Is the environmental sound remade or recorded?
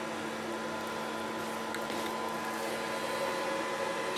recorded